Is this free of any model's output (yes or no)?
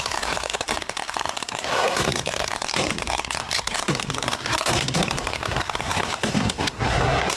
no